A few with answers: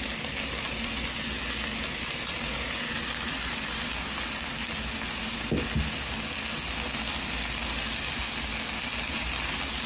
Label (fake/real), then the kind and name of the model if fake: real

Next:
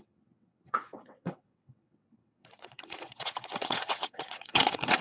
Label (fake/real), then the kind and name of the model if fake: fake, vocoder, WaveNeXt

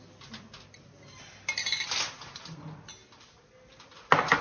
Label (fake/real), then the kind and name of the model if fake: real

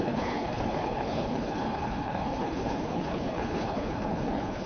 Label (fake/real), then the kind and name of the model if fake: fake, codec, HILCodec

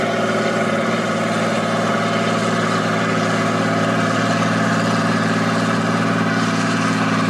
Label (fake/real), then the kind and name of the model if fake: fake, vocoder, BigVGAN v2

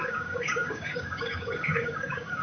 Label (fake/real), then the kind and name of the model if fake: fake, codec, DAC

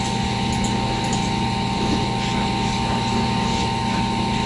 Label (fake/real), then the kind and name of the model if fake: real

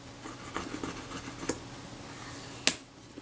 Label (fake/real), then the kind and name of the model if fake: real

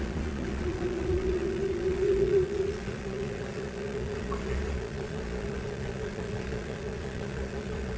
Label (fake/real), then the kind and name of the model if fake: fake, vocoder, Vocos